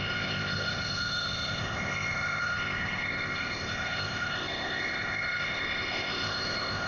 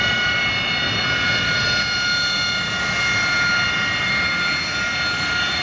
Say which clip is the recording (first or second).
second